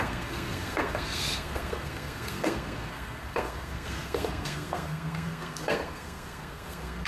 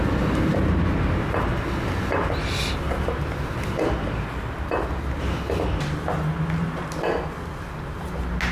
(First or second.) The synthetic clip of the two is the first